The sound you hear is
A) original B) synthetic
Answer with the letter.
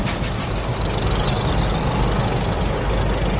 A